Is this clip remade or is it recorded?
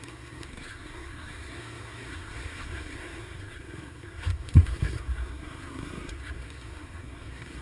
remade